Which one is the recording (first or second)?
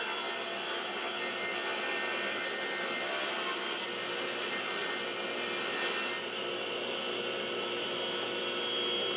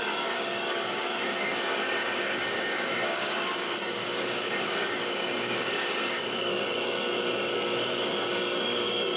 first